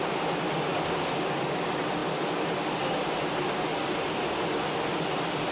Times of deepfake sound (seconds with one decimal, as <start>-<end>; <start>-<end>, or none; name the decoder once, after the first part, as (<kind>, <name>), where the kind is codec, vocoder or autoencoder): none